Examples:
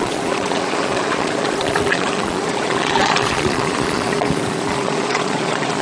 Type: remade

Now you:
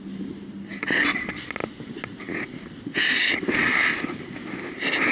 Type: recorded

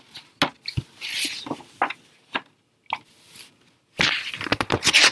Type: recorded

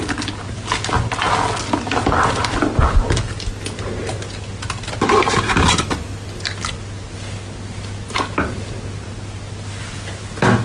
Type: recorded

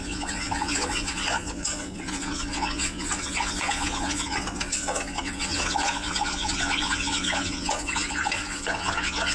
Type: remade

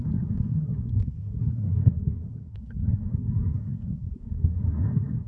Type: remade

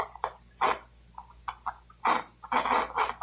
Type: recorded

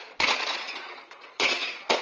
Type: remade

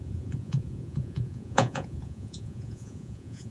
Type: remade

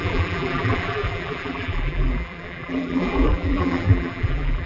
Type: remade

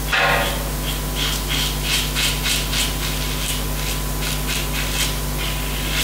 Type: recorded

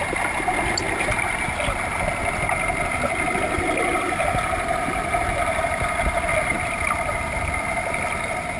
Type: recorded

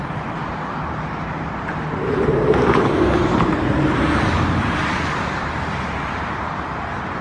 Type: remade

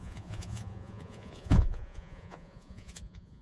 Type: remade